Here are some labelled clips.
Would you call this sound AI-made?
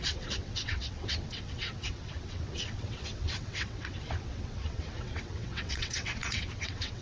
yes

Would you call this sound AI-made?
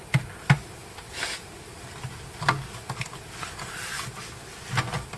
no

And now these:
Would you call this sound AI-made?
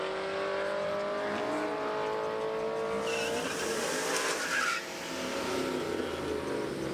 no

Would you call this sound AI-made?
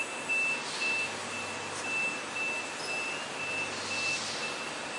no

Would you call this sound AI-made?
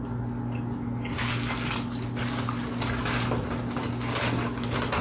no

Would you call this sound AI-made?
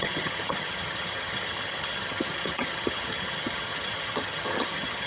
yes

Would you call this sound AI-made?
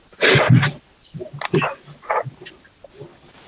no